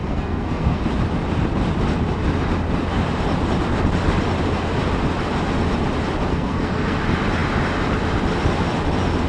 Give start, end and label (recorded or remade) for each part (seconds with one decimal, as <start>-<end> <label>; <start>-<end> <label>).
0.0-0.8 remade; 0.8-6.3 recorded; 6.3-7.0 remade; 7.0-9.3 recorded